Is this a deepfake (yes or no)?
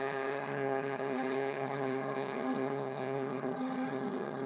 yes